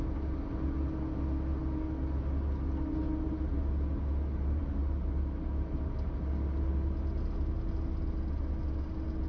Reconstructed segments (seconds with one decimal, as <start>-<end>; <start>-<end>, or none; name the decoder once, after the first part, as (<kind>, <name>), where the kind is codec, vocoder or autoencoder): none